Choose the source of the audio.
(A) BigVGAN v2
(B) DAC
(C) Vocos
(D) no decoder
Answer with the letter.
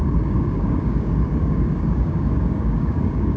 B